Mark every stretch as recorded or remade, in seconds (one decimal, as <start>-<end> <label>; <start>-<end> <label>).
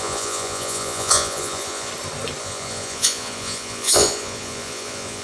0.0-1.9 remade; 1.9-2.4 recorded; 2.4-5.2 remade